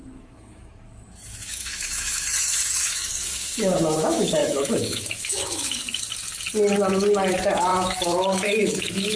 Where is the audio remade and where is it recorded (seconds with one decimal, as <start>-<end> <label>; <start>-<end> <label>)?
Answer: 0.0-5.8 remade; 5.8-7.3 recorded; 7.3-9.2 remade

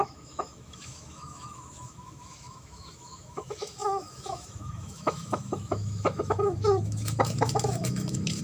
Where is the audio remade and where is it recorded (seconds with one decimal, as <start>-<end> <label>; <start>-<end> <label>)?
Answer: 0.0-8.4 remade

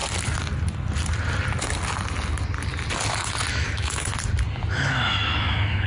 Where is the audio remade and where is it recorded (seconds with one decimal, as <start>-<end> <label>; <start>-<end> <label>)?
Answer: 0.0-3.5 recorded; 3.5-4.1 remade; 4.1-4.7 recorded; 4.7-5.9 remade

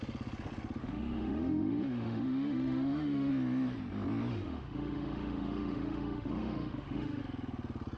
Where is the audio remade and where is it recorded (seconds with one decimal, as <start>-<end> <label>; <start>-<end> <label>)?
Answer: 0.0-0.8 recorded; 0.8-3.3 remade; 3.3-4.3 recorded; 4.3-7.2 remade; 7.2-8.0 recorded

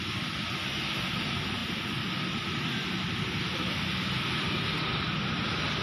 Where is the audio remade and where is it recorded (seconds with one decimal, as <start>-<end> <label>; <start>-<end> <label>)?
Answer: 0.0-5.8 recorded

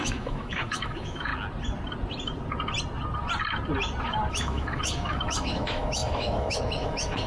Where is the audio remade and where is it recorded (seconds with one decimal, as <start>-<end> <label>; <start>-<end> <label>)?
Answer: 0.0-1.3 remade; 1.3-4.3 recorded; 4.3-7.3 remade

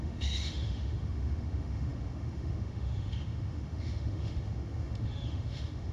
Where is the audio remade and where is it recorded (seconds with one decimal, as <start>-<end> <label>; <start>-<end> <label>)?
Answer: 0.0-5.9 remade

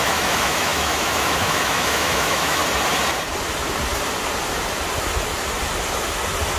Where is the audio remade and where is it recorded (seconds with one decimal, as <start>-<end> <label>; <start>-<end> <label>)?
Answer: 0.0-2.6 remade; 2.6-6.6 recorded